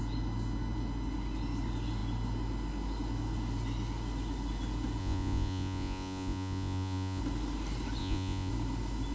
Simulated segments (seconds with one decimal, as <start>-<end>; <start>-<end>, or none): 5.0-7.2; 8.0-8.5

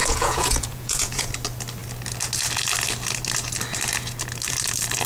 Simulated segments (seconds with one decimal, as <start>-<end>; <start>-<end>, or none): 0.0-1.3

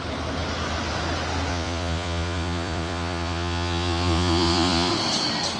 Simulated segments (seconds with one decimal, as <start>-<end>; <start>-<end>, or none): 1.5-4.9